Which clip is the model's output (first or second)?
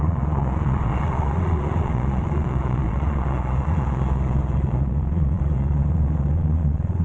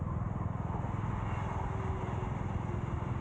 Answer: first